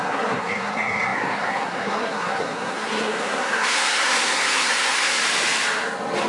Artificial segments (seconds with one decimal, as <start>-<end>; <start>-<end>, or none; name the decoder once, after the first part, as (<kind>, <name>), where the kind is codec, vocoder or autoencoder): 0.0-5.2 (codec, SNAC)